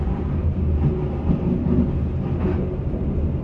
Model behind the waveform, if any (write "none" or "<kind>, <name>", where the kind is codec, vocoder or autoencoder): none